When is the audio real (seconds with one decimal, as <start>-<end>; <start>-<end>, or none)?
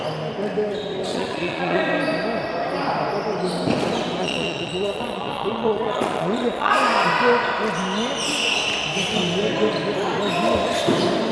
0.0-1.1; 1.8-4.2; 6.7-11.3